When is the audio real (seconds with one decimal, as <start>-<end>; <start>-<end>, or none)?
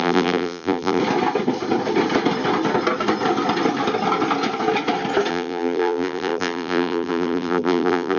1.0-5.3